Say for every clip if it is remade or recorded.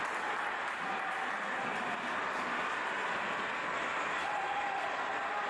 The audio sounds recorded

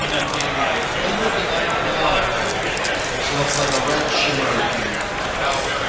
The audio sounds recorded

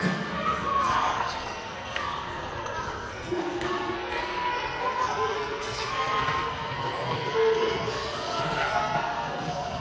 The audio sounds remade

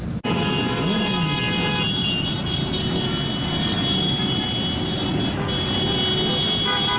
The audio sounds recorded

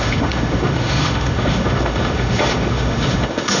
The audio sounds remade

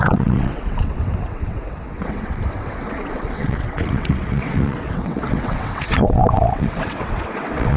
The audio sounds remade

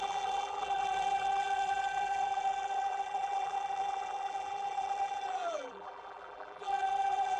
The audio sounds remade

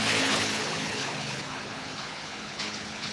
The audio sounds remade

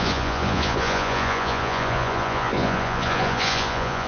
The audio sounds remade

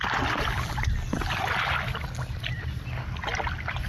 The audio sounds recorded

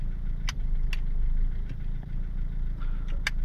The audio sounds recorded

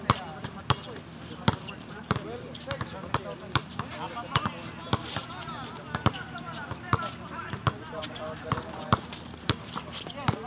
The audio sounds recorded